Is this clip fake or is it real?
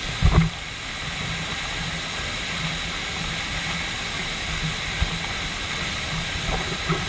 real